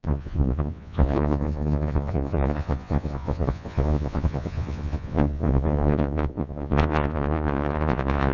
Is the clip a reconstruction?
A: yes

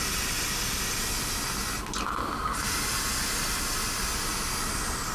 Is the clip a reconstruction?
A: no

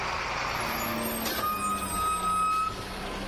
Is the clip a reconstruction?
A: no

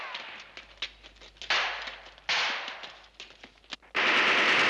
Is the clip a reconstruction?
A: no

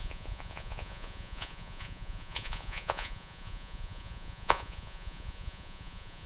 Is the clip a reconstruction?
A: yes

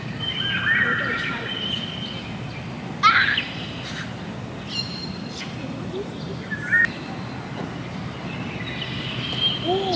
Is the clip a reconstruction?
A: no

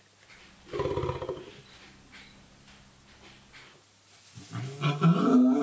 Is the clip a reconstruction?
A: no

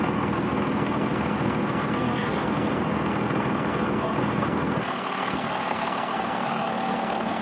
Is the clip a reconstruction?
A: yes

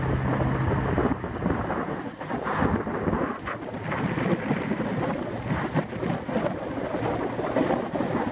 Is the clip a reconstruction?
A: no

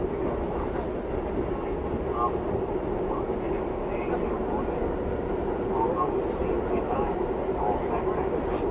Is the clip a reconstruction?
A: no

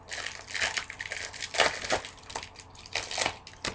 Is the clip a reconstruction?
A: no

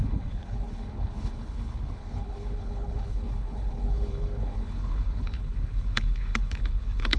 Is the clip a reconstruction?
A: yes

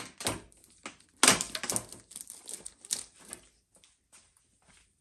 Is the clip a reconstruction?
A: no